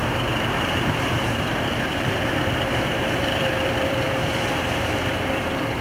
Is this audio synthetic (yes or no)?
yes